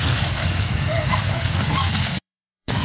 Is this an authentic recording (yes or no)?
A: no